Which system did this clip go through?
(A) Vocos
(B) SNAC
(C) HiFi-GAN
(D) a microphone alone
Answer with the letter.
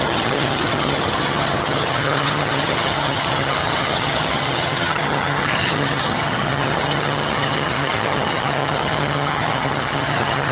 C